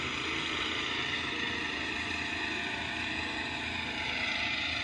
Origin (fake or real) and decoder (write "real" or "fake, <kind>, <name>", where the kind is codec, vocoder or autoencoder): real